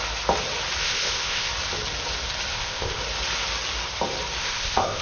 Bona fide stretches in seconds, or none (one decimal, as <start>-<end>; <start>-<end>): 0.0-0.8; 1.5-2.5; 3.0-4.4

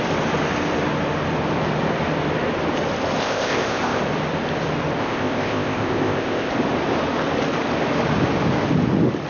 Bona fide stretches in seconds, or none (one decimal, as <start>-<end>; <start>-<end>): 0.0-3.2; 4.0-5.0; 6.5-9.3

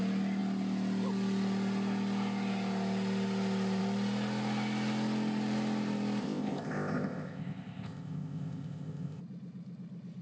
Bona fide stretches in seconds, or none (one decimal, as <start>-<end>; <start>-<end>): 0.0-6.2; 9.2-10.2

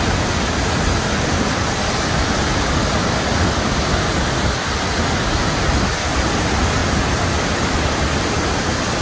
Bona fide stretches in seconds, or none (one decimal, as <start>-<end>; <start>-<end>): 0.0-9.0